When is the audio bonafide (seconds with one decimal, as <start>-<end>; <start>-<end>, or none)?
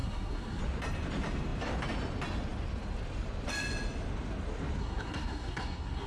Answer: 0.6-4.8